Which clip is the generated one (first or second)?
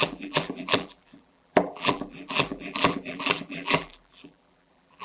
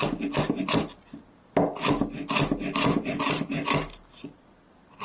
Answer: first